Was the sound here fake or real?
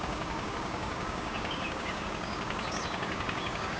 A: fake